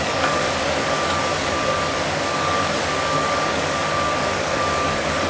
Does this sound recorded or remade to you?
remade